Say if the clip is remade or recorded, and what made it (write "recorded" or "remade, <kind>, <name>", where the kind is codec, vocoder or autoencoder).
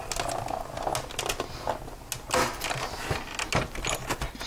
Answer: recorded